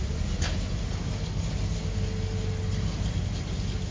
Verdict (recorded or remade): recorded